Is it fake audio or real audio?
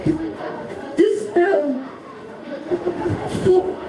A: fake